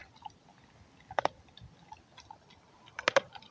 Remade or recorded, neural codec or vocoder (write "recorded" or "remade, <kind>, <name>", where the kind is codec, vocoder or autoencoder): recorded